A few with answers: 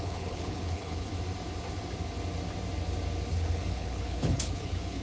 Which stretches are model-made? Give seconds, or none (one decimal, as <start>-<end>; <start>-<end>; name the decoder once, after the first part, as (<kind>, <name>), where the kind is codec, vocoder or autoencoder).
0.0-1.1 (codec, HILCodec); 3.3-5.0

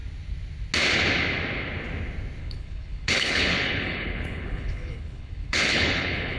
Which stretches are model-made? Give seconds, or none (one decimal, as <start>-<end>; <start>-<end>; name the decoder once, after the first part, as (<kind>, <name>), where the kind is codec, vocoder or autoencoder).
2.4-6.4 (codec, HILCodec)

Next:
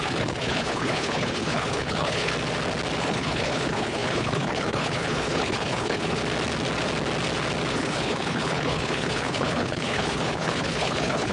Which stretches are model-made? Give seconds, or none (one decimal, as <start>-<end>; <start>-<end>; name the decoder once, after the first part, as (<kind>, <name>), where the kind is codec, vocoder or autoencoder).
0.0-2.3 (codec, HILCodec); 3.0-6.2; 7.7-11.3